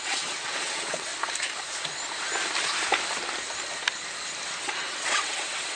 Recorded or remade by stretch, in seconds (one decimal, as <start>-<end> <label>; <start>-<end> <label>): 0.0-1.1 remade; 1.1-4.6 recorded; 4.6-5.8 remade